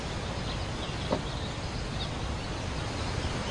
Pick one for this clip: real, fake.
real